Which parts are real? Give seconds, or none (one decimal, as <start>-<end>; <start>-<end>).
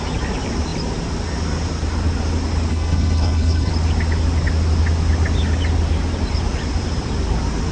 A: 0.0-2.7; 3.7-7.7